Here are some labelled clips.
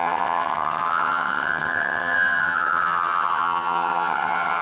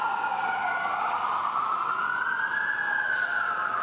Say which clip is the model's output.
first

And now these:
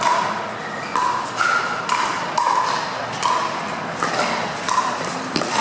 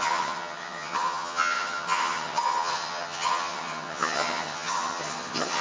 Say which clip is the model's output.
second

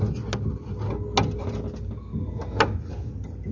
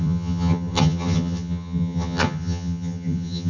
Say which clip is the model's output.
second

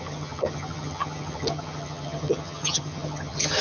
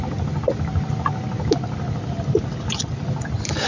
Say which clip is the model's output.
first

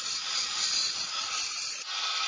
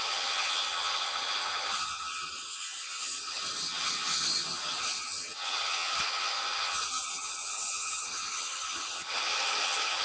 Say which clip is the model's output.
second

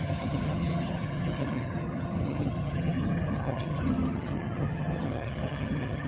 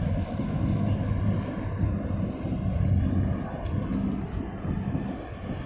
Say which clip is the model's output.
first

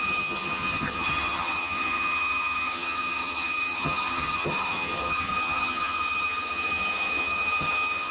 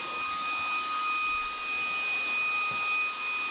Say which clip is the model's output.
first